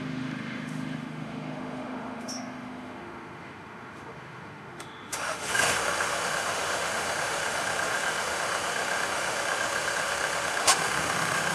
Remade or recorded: remade